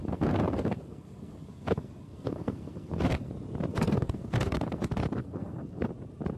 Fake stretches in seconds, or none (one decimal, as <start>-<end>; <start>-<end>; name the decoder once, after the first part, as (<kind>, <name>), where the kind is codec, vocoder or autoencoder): 0.0-3.3 (codec, SNAC); 3.7-4.8; 5.2-5.9

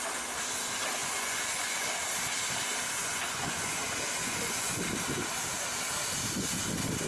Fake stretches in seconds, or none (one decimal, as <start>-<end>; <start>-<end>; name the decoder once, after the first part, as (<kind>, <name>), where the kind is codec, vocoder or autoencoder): 1.0-1.9 (vocoder, Vocos); 3.0-3.8; 4.2-4.8

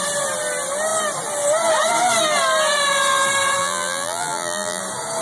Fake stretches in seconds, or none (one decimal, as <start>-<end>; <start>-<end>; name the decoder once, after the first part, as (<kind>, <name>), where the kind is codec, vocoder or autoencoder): 3.6-4.8 (vocoder, BigVGAN v2)

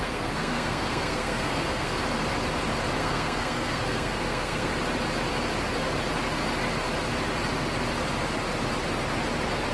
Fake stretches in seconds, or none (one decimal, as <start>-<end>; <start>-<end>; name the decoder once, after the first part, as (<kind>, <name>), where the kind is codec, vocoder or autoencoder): 0.0-2.0 (codec, SNAC); 3.0-4.7

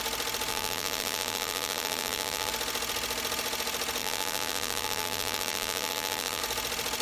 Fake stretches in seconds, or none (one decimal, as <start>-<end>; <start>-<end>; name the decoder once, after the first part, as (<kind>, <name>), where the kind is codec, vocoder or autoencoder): 0.5-2.5 (vocoder, BigVGAN v2); 4.0-6.4

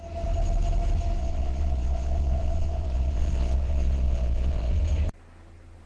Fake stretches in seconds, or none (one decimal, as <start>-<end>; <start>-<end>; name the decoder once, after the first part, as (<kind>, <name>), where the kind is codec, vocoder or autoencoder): 1.2-4.7 (vocoder, Vocos)